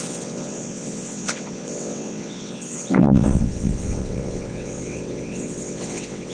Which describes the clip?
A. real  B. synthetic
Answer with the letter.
B